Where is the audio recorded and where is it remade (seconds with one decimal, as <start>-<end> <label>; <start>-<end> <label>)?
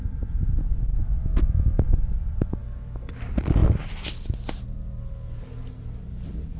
0.0-2.6 recorded; 2.6-3.1 remade; 3.1-6.6 recorded